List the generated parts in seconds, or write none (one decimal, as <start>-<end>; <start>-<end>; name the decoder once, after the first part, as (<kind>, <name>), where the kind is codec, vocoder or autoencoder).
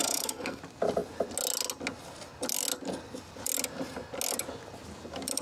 0.0-0.6 (codec, SNAC)